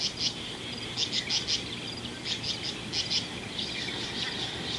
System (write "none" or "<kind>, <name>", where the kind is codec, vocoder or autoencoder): none